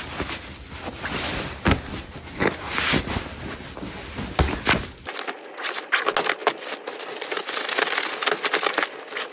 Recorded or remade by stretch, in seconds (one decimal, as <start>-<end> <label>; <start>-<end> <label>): 0.0-9.3 recorded